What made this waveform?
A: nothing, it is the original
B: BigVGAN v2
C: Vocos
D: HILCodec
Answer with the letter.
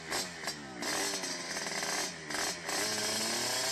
A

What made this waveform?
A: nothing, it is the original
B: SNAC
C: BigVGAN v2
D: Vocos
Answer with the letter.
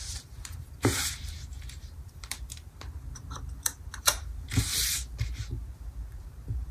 C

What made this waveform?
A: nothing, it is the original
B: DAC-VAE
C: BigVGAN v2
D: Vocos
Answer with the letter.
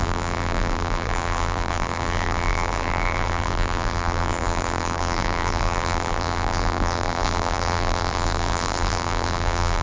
C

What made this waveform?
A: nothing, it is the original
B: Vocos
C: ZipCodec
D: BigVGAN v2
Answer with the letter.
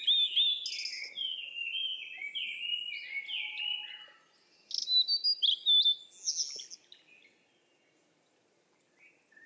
A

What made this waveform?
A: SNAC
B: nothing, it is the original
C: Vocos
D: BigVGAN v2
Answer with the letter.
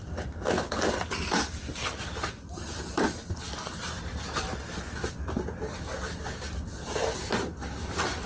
D